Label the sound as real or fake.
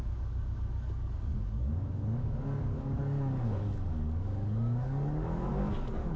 fake